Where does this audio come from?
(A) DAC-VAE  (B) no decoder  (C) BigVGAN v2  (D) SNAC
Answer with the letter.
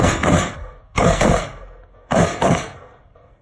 D